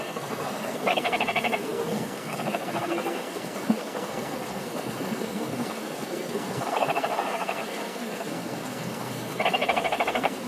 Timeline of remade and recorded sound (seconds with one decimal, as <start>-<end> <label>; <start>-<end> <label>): 0.0-10.5 remade